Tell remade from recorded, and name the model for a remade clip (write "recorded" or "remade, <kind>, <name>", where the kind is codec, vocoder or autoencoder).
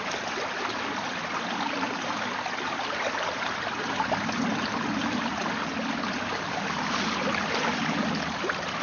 recorded